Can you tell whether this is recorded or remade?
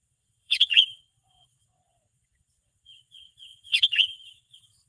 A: remade